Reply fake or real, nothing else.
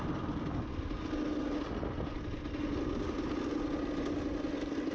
real